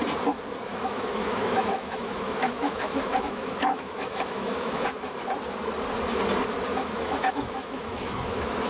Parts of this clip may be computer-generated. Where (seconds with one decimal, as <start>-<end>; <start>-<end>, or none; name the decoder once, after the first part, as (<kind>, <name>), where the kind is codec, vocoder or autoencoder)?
0.7-5.2 (autoencoder, DAC-VAE); 6.7-8.7